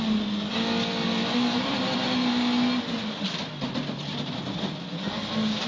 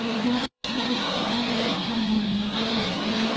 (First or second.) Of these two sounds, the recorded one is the first